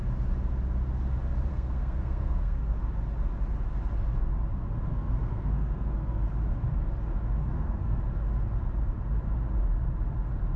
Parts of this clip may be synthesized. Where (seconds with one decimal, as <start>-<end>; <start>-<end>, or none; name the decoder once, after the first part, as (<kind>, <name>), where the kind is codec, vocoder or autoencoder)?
1.5-2.8 (codec, SNAC); 4.9-6.3; 7.5-8.0